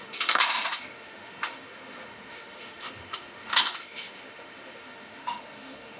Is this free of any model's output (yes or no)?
no